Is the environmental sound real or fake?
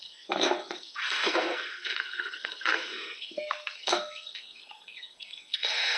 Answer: fake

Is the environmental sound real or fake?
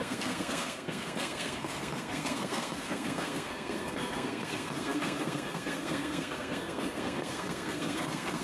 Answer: fake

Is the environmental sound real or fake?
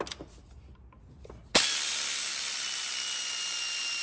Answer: real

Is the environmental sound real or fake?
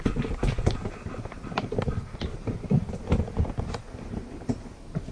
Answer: real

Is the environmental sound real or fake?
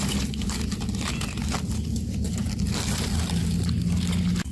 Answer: real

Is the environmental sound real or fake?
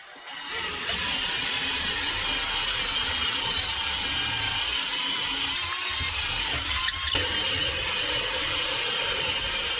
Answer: real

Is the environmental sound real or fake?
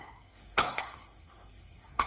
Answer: fake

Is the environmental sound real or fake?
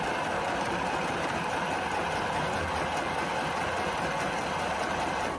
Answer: real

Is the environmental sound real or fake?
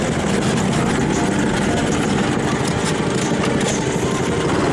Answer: real